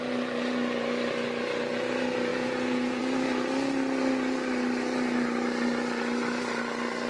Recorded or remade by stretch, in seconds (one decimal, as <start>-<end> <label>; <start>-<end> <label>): 0.0-2.3 recorded; 2.3-3.0 remade; 3.0-7.1 recorded